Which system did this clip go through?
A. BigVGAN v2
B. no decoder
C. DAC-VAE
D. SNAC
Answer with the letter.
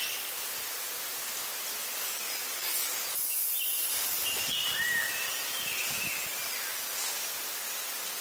B